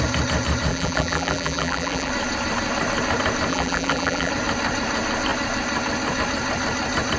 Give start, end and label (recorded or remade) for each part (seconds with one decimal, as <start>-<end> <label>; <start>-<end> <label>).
0.0-0.7 recorded; 0.7-2.1 remade; 2.1-3.5 recorded; 3.5-4.3 remade; 4.3-7.2 recorded